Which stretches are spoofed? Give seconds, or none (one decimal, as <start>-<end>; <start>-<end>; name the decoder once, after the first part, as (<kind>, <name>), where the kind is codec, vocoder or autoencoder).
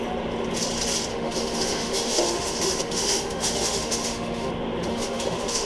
1.1-4.5 (autoencoder, DAC-VAE); 4.9-5.7